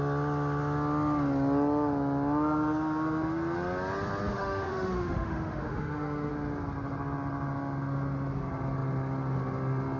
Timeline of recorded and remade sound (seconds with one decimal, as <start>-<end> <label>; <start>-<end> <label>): 0.0-4.3 recorded; 4.3-6.3 remade; 6.3-10.0 recorded